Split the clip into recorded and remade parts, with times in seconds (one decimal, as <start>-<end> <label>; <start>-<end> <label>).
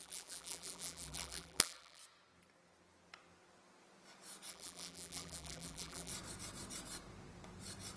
0.0-2.0 remade; 2.0-4.5 recorded; 4.5-6.1 remade; 6.1-8.0 recorded